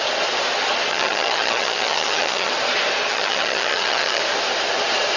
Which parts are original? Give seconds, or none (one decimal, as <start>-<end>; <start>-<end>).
0.0-0.9; 2.5-3.1; 4.2-5.2